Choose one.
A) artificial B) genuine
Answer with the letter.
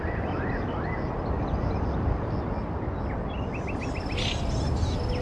B